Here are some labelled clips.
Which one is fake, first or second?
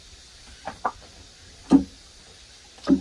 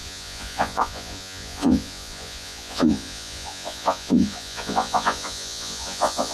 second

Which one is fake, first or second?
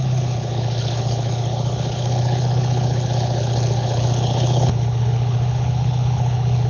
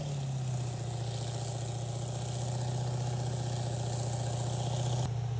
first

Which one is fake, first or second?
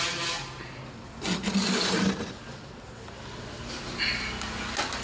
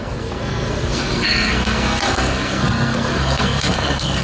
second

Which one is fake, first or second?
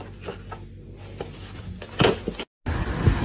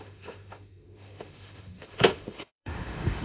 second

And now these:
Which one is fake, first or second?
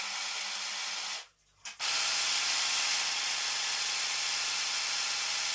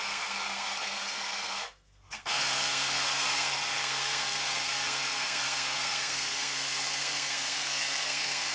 second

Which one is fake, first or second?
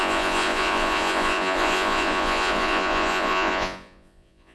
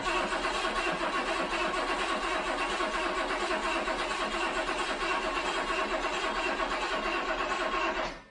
first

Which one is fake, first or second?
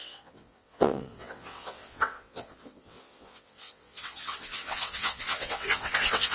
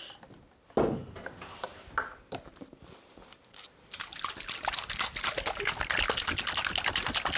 first